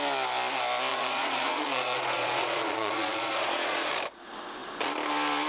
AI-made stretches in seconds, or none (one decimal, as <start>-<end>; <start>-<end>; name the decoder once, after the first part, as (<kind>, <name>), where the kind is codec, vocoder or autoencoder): 0.9-3.9 (vocoder, Vocos)